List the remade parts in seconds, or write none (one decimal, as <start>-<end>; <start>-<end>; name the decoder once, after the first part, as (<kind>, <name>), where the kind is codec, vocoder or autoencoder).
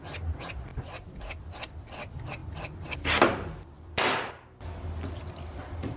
0.7-1.5 (vocoder, BigVGAN v2); 2.4-4.3